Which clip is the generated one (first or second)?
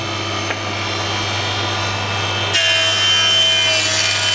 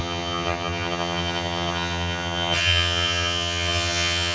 second